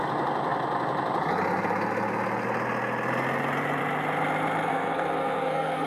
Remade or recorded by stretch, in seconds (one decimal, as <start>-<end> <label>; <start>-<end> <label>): 0.0-4.7 recorded; 4.7-5.9 remade